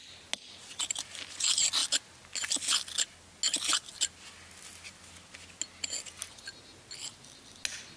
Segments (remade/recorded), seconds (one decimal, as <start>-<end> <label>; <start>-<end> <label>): 0.0-8.0 recorded